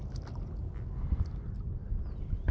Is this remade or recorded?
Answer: recorded